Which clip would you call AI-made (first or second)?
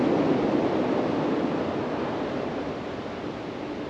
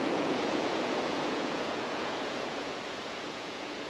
second